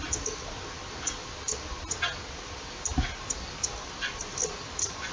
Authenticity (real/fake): real